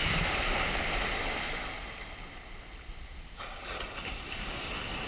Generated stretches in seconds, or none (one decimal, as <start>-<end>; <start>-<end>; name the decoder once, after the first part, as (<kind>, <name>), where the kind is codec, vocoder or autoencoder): none